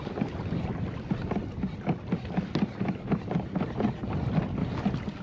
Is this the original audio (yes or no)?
yes